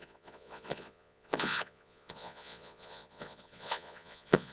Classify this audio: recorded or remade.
remade